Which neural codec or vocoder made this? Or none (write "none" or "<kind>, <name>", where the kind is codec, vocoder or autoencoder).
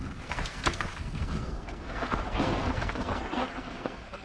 codec, SNAC